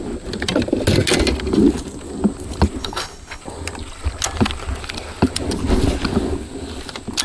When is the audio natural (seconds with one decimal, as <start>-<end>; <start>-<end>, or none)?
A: 0.0-2.8; 3.4-7.2